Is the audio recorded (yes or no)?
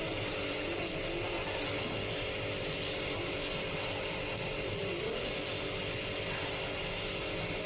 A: yes